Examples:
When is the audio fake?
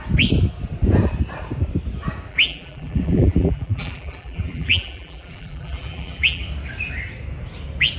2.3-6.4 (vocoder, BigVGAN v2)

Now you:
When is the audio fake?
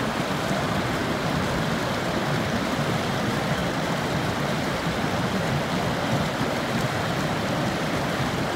none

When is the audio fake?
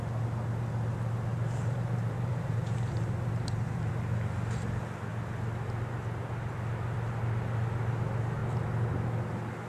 1.3-3.9 (vocoder, BigVGAN v2)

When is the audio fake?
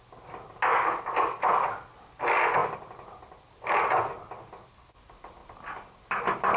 none